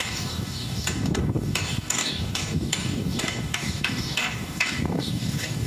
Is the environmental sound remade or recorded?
remade